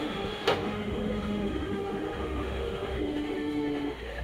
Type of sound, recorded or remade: remade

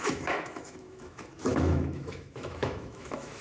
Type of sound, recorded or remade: remade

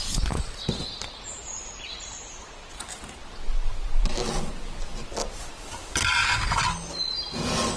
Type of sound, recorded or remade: recorded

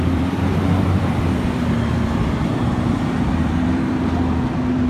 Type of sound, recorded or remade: remade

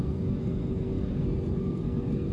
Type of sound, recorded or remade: remade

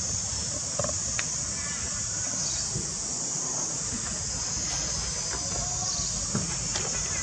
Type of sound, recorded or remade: recorded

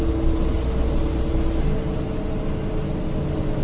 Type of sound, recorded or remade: recorded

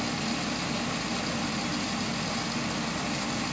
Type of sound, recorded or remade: recorded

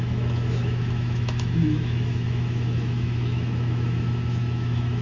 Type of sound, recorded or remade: remade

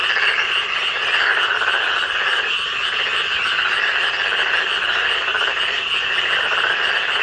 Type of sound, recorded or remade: recorded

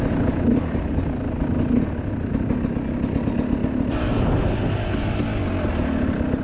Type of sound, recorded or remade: recorded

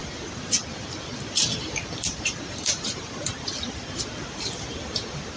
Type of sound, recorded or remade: remade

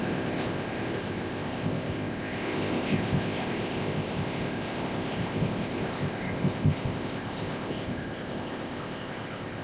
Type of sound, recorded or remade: remade